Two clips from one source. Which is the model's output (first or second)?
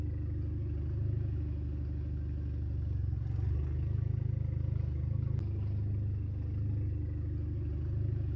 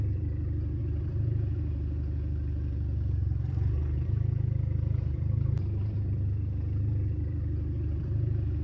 second